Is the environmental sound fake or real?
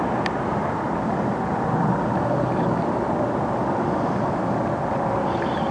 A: real